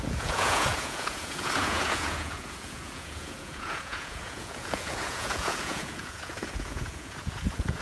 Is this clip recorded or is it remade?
remade